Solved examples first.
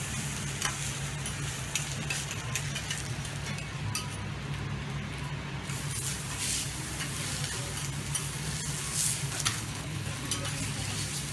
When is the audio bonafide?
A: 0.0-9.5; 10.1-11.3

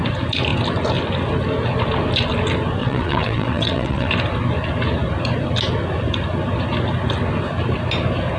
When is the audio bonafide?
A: 0.0-2.8; 4.1-8.4

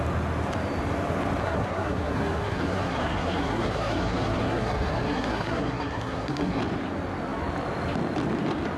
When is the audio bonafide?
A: 0.0-1.4; 6.6-8.8

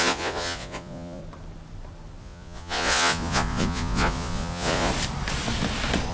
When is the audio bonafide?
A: 1.2-2.2; 4.9-6.1